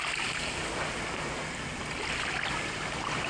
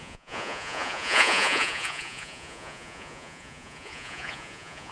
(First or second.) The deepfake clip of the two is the second